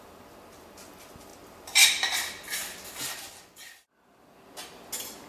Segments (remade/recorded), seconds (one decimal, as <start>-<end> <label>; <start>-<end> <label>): 0.0-5.3 recorded